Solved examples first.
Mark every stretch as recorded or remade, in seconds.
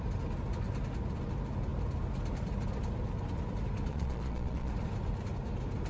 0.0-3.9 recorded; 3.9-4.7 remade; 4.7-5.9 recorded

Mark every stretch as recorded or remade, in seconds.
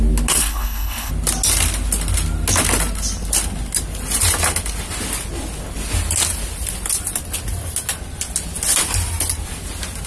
0.0-0.4 recorded; 0.4-1.1 remade; 1.1-10.1 recorded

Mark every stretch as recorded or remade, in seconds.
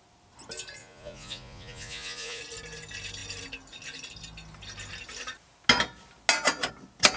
0.0-0.8 recorded; 0.8-2.4 remade; 2.4-7.2 recorded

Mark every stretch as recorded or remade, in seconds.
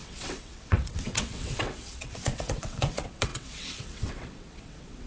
0.0-5.1 remade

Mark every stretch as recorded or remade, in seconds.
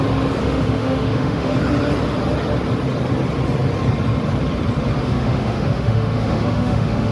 0.0-0.4 recorded; 0.4-1.6 remade; 1.6-5.0 recorded; 5.0-7.1 remade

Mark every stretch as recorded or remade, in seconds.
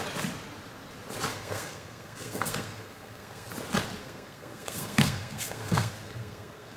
0.0-1.3 recorded; 1.3-3.5 remade; 3.5-4.0 recorded; 4.0-6.8 remade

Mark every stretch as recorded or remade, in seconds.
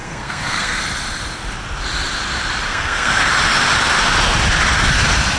0.0-0.8 remade; 0.8-2.7 recorded; 2.7-3.2 remade; 3.2-5.4 recorded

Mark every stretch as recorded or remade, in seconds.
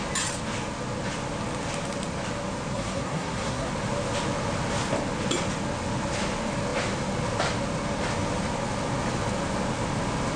0.0-2.7 recorded; 2.7-3.7 remade; 3.7-10.4 recorded